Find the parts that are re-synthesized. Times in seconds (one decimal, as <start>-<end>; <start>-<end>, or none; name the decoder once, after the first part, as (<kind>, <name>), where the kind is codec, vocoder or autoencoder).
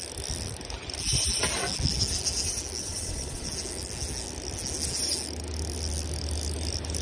2.8-3.5 (vocoder, Vocos)